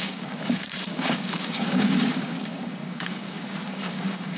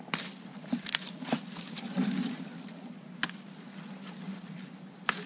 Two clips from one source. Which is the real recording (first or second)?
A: second